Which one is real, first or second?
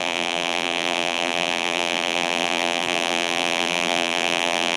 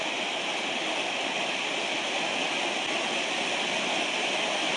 second